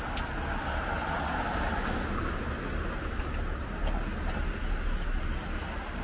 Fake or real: real